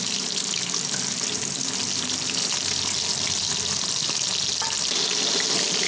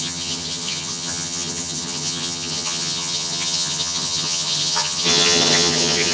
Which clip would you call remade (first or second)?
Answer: second